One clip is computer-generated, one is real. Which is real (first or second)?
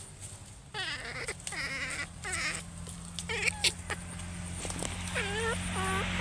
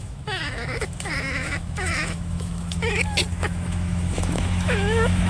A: first